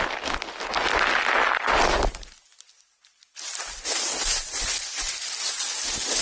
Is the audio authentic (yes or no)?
yes